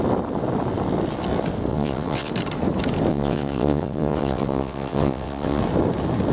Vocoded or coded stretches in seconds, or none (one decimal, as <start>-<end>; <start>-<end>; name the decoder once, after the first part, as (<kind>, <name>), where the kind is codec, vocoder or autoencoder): 1.7-2.3 (vocoder, WaveNeXt); 3.1-5.6